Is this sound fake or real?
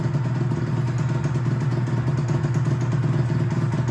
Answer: real